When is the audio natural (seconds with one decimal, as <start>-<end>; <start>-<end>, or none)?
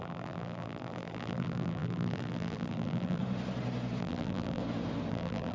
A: 3.2-4.0; 4.6-5.1